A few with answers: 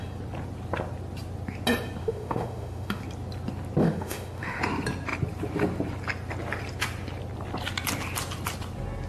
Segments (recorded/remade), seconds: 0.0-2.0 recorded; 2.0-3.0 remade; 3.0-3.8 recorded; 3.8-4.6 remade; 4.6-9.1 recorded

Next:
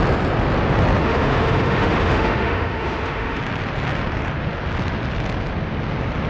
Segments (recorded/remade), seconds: 0.0-1.0 recorded; 1.0-3.4 remade; 3.4-6.3 recorded